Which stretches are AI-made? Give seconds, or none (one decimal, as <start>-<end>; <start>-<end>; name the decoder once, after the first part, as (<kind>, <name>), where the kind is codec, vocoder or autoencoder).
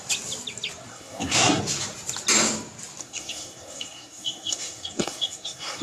0.9-1.6 (codec, SNAC); 3.0-5.8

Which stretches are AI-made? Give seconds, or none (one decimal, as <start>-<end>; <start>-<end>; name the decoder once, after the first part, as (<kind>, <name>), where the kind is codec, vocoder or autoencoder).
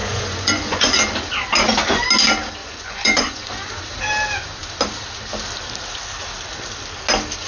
0.0-0.9 (vocoder, Vocos); 2.6-3.7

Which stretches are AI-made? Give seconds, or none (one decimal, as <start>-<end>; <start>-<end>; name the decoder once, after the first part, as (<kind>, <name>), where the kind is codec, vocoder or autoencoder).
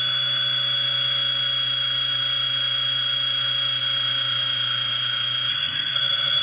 5.5-6.4 (codec, SNAC)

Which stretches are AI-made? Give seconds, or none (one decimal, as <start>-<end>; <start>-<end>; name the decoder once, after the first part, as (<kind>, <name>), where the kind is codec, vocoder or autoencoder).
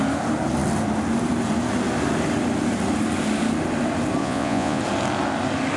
4.2-4.8 (vocoder, Vocos)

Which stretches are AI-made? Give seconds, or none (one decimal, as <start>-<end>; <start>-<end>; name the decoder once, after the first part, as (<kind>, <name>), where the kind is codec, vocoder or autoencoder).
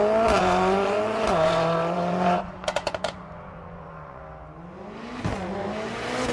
0.4-4.2 (vocoder, Vocos)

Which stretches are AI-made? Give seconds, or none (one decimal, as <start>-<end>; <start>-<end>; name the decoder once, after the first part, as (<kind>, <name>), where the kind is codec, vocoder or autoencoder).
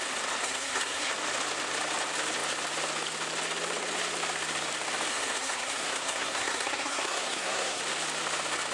0.4-1.1 (codec, SNAC); 5.1-7.8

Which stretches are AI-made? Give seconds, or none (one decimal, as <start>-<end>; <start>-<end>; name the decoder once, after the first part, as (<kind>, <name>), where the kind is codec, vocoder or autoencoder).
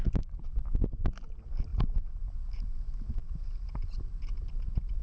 none